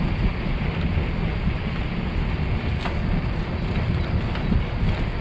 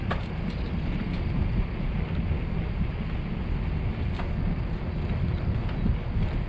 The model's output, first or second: first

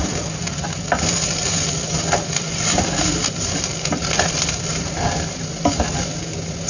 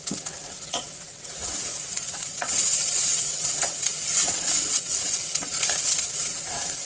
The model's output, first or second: second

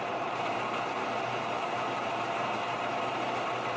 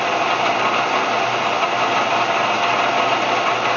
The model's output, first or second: first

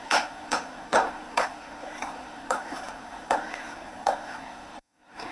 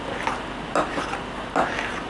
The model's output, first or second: first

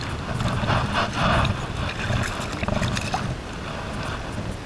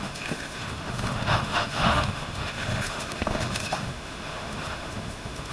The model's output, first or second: second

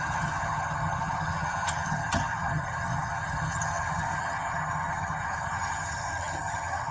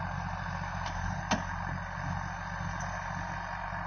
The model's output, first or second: first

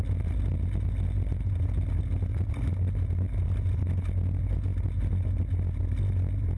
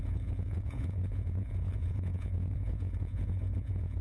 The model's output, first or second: second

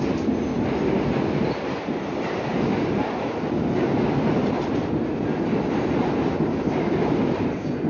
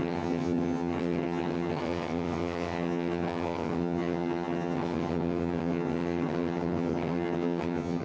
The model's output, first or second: second